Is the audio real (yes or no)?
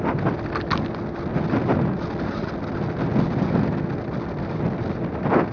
yes